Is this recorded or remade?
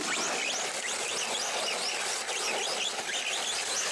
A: recorded